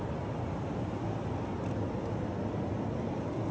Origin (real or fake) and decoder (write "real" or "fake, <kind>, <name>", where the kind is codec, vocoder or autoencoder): real